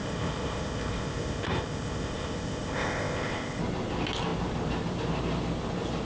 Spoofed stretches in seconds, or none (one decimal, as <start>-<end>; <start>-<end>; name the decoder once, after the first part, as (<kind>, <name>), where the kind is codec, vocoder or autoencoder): 0.0-3.6 (codec, ZipCodec)